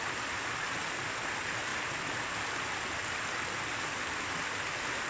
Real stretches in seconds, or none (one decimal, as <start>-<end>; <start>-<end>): 0.0-5.1